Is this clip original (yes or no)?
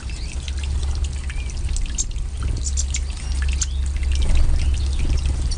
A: yes